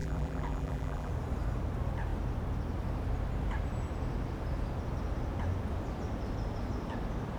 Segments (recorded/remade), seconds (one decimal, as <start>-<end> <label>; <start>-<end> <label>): 0.0-1.1 remade; 1.1-7.4 recorded